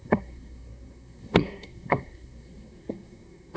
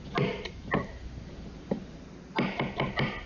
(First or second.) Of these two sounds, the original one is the second